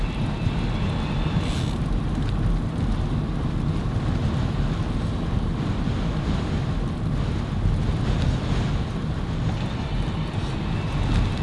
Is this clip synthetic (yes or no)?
no